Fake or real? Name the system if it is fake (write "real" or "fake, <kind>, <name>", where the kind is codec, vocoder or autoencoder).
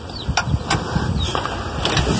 real